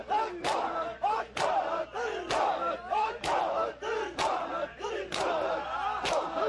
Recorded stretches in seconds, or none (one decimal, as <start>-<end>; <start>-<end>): 3.5-4.5; 5.7-6.5